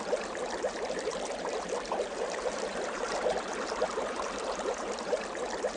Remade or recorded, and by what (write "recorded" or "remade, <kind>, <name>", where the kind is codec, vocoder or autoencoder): remade, vocoder, BigVGAN v2